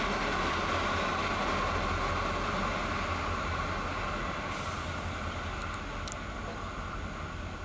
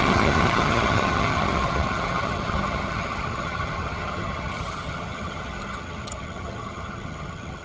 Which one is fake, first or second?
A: second